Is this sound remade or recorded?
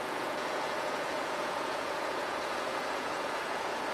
remade